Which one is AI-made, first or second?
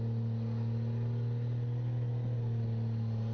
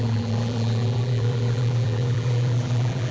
second